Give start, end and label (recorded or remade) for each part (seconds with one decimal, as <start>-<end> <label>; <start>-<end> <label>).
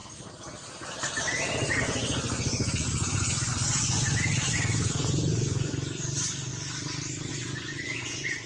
0.0-1.8 recorded; 1.8-6.5 remade; 6.5-7.3 recorded; 7.3-8.5 remade